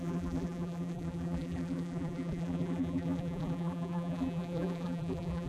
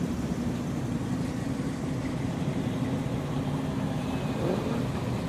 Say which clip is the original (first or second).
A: second